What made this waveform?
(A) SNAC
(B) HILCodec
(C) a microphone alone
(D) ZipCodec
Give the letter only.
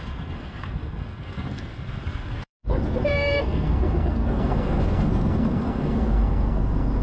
A